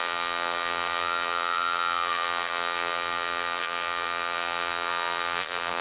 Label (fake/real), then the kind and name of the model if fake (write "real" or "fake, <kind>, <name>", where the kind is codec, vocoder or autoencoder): fake, vocoder, BigVGAN v2